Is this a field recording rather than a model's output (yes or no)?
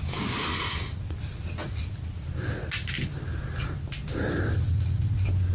yes